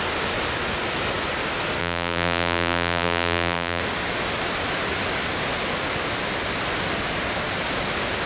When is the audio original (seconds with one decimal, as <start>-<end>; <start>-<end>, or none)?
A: 0.0-1.8; 3.8-8.3